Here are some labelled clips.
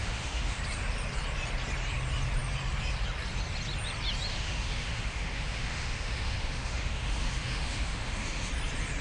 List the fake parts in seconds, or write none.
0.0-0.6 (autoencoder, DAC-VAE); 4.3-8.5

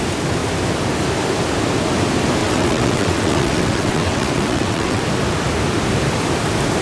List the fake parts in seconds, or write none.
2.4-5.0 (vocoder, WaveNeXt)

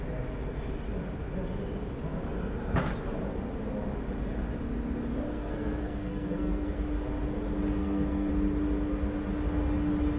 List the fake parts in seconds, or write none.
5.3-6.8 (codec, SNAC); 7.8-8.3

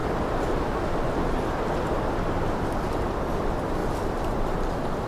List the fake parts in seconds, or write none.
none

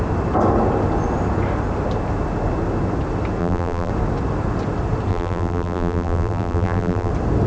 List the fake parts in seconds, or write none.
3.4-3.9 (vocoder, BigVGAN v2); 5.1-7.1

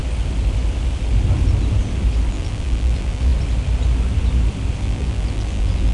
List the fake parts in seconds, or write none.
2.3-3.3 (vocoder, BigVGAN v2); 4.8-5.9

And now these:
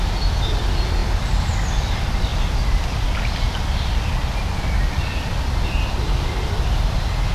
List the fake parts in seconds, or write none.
none